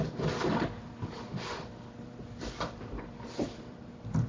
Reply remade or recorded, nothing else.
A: remade